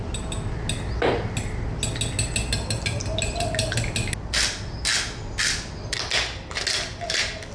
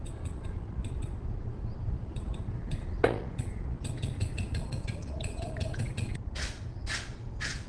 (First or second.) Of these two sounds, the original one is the first